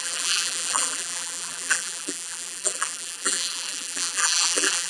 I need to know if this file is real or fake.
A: fake